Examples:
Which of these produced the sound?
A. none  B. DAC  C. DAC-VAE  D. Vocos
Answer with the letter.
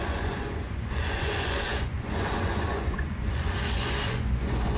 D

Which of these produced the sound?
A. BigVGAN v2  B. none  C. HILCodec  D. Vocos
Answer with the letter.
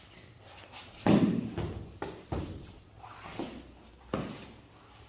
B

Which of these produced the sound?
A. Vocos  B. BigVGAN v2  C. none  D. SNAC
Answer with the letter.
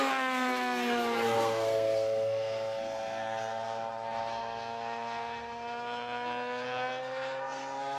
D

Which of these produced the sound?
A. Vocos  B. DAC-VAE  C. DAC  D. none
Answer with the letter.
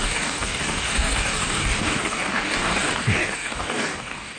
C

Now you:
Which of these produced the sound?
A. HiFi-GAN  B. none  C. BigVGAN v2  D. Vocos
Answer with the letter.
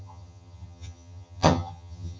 A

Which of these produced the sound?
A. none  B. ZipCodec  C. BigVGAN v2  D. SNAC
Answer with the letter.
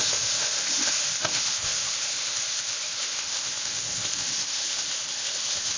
B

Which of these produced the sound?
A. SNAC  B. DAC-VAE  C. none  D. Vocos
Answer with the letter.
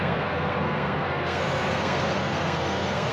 A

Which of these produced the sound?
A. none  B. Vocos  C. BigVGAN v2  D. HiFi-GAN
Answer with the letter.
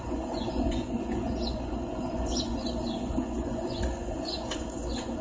B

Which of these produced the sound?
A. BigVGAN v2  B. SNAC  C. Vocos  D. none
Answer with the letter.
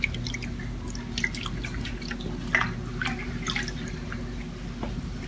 D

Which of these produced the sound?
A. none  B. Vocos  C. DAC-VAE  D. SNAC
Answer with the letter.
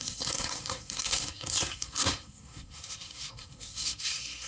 D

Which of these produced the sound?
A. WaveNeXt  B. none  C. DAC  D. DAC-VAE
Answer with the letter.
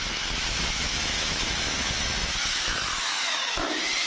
D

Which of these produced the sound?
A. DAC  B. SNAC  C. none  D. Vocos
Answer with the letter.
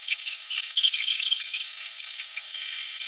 B